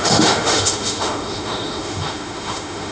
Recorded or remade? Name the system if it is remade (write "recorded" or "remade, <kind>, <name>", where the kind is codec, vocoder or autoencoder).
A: remade, autoencoder, DAC-VAE